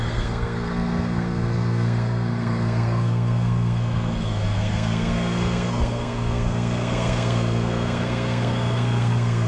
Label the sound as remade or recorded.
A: remade